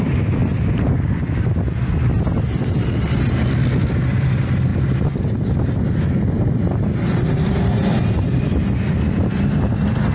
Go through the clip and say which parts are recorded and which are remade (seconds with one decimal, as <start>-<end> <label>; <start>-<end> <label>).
0.0-0.4 recorded; 0.4-3.3 remade; 3.3-4.7 recorded; 4.7-5.8 remade; 5.8-10.1 recorded